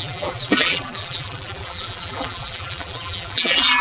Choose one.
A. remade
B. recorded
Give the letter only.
A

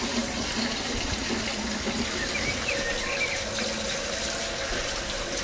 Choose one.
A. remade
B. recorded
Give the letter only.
B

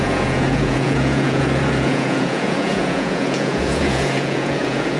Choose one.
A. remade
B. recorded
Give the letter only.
A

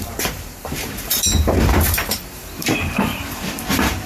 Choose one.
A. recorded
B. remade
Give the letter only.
B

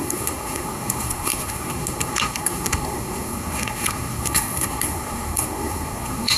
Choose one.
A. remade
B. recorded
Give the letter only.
A